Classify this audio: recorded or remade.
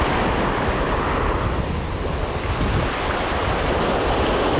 recorded